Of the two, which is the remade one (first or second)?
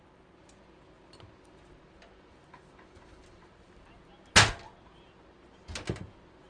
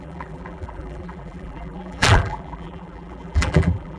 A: second